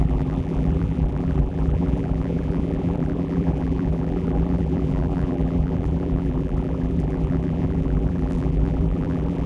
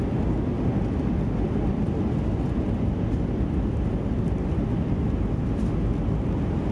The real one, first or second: second